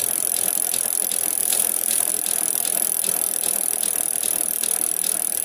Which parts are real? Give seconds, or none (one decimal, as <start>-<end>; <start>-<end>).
0.0-1.4; 2.1-5.4